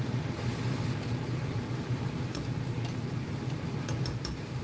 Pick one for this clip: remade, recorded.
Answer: remade